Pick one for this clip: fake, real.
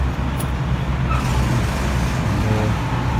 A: real